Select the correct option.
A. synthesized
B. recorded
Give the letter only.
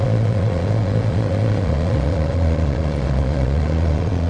A